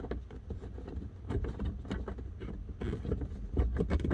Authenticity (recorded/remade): recorded